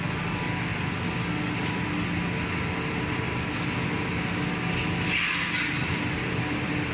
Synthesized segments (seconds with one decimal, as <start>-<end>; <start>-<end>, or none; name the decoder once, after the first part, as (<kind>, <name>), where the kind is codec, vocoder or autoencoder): none